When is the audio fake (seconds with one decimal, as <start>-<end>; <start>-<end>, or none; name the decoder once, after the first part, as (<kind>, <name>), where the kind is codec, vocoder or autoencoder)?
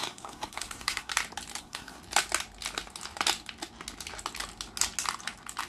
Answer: 0.0-1.1 (codec, SNAC); 1.6-2.0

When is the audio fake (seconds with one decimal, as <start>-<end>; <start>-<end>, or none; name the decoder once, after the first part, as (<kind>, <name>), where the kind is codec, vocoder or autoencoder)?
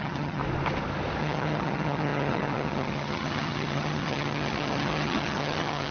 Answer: 0.0-0.4 (vocoder, HiFi-GAN); 1.2-5.9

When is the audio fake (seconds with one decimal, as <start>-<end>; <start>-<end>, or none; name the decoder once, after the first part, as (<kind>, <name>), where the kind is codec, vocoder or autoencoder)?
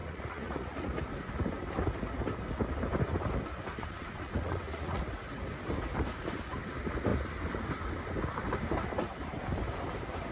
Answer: 0.0-1.0 (vocoder, Vocos); 3.8-5.0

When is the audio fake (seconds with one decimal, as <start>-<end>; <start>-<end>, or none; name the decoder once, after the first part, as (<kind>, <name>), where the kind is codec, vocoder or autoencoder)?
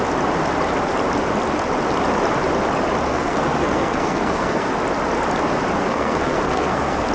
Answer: 3.1-4.7 (codec, SNAC); 5.8-7.1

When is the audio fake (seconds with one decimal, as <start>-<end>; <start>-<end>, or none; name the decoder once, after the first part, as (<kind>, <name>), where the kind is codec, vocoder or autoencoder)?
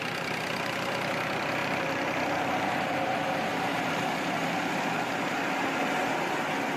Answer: 1.6-2.2 (vocoder, BigVGAN v2); 3.5-4.8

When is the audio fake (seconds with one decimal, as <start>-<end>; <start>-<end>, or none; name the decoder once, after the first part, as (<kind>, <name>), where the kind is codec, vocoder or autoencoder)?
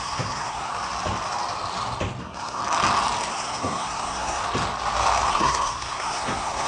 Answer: 0.0-0.7 (codec, SNAC); 2.2-2.6; 3.3-4.4; 5.3-6.7